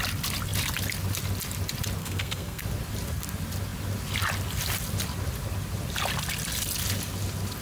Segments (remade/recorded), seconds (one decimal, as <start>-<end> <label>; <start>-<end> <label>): 0.0-2.0 recorded; 2.0-2.6 remade; 2.6-7.6 recorded